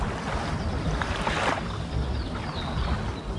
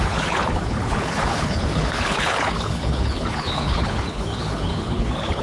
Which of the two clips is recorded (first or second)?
first